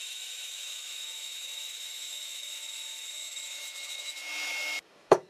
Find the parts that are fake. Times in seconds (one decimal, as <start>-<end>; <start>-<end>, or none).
0.0-5.3

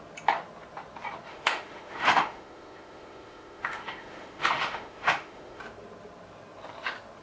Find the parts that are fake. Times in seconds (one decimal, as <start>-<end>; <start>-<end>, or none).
1.3-5.6

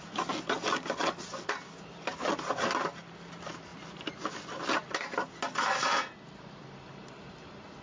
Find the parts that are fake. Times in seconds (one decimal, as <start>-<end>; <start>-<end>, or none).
none

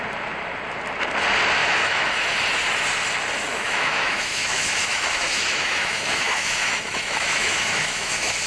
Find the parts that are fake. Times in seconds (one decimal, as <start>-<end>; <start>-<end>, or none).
1.6-2.1; 3.5-8.5

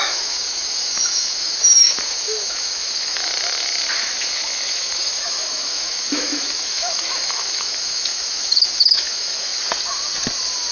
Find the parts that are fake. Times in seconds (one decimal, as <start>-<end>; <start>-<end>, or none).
0.0-9.5

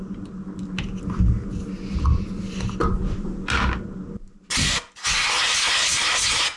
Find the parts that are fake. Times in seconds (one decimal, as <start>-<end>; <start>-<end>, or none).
none

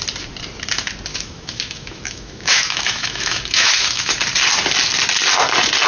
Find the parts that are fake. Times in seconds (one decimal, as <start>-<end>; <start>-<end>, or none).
1.1-4.1

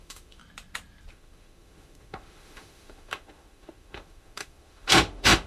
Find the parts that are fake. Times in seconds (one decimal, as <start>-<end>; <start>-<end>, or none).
0.0-0.4; 1.1-5.5